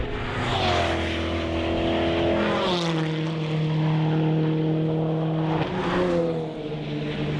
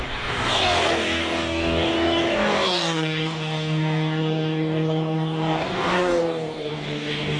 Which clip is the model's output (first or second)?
second